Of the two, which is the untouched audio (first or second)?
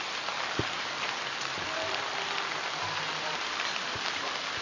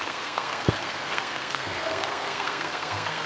first